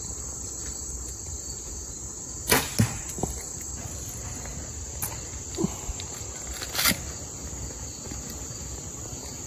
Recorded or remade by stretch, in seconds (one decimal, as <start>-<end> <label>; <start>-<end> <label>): 0.0-9.5 recorded

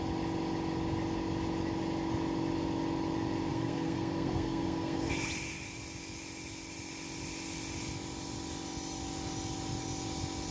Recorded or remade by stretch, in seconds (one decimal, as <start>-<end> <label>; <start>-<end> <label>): 0.0-3.5 recorded; 3.5-5.1 remade; 5.1-10.5 recorded

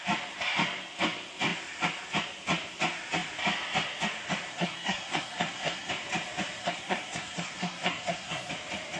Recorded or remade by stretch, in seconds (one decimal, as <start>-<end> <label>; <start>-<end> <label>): 0.0-4.5 recorded; 4.5-5.9 remade; 5.9-6.6 recorded; 6.6-8.5 remade; 8.5-9.0 recorded

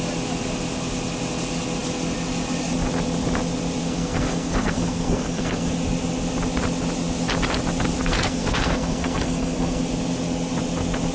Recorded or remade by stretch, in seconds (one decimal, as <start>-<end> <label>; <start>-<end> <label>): 0.0-3.8 recorded; 3.8-5.7 remade; 5.7-8.0 recorded; 8.0-9.8 remade; 9.8-11.1 recorded

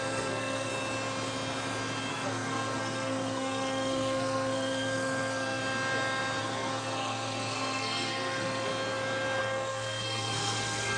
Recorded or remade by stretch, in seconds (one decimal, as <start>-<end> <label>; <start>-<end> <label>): 0.0-0.7 remade; 0.7-2.1 recorded; 2.1-5.6 remade; 5.6-6.4 recorded; 6.4-8.7 remade; 8.7-9.4 recorded; 9.4-11.0 remade

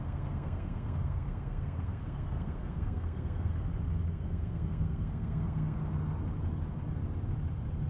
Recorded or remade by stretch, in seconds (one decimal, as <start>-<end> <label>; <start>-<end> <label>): 0.0-3.5 remade; 3.5-4.1 recorded; 4.1-5.8 remade; 5.8-7.9 recorded

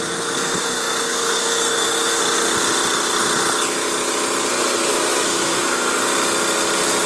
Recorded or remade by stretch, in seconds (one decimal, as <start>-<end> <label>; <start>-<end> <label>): 0.0-2.2 remade; 2.2-4.5 recorded; 4.5-6.0 remade; 6.0-7.1 recorded